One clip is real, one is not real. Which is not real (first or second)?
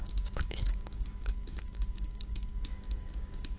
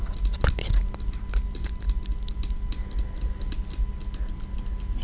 first